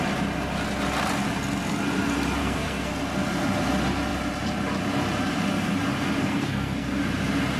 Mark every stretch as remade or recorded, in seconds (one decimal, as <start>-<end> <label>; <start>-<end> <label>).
0.0-2.4 recorded; 2.4-2.9 remade; 2.9-6.2 recorded; 6.2-7.0 remade; 7.0-7.6 recorded